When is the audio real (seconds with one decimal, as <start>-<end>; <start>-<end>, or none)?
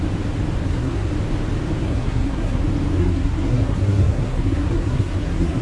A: 0.0-0.6; 1.1-1.8; 2.6-3.0